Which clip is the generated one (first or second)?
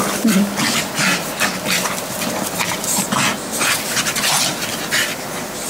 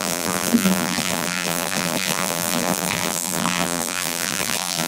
second